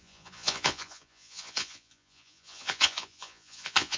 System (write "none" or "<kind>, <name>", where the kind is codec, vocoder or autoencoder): vocoder, Vocos